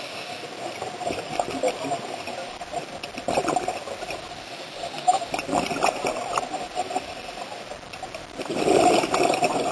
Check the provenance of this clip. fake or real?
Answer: real